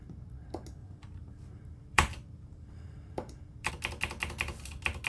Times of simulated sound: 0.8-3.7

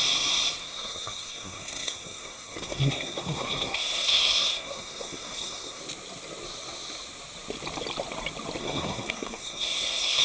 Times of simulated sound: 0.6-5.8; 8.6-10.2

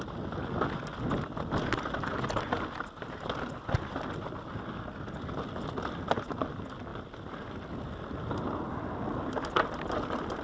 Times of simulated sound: none

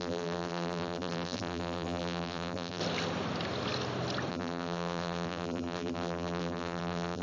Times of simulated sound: 0.0-2.8; 4.3-7.2

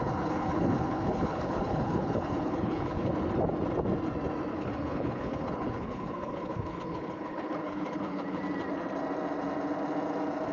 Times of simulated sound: 0.0-3.1; 4.5-8.4

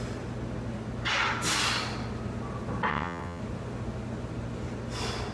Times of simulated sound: 2.9-3.4

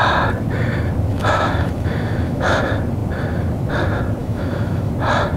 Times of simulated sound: 1.1-2.6; 4.2-4.9

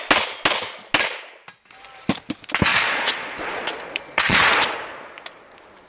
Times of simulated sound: 2.7-4.5